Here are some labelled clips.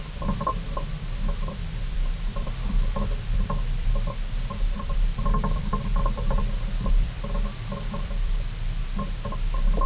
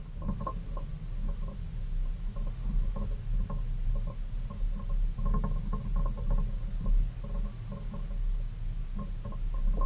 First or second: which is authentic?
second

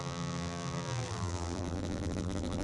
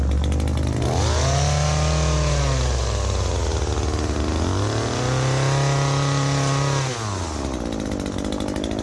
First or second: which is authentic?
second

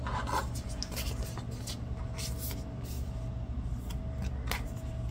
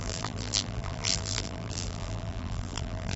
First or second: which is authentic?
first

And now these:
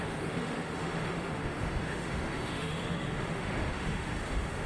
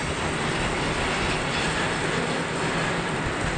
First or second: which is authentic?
second